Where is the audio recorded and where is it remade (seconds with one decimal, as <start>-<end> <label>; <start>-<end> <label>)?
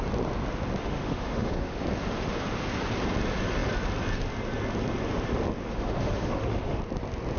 0.0-0.8 recorded; 0.8-1.8 remade; 1.8-5.6 recorded; 5.6-6.8 remade; 6.8-7.4 recorded